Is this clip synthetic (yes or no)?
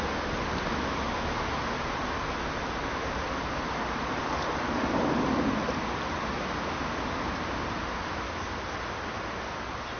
no